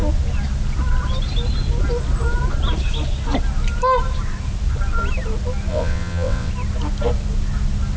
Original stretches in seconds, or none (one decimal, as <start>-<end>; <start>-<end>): 0.0-5.7; 6.5-8.0